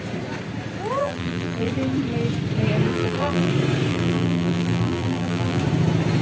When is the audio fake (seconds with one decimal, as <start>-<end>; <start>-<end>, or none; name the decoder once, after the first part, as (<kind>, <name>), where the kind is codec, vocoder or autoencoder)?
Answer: 1.0-1.7 (vocoder, BigVGAN v2); 2.9-3.5; 3.9-5.6